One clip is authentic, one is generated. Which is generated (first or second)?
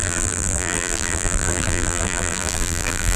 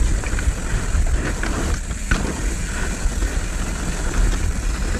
first